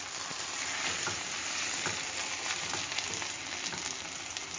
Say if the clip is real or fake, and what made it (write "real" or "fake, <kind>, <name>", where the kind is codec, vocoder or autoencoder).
real